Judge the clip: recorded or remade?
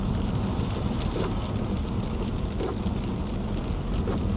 recorded